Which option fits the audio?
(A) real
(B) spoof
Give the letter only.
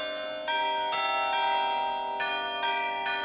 A